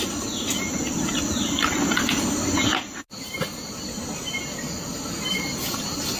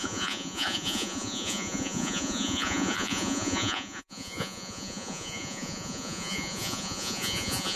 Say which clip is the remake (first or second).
second